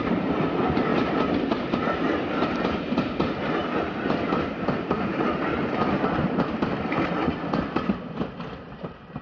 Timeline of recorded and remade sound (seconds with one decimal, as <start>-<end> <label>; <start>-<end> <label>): 0.0-9.2 recorded